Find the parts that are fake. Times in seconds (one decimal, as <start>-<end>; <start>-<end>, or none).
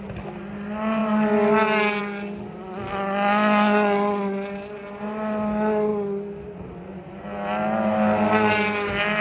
none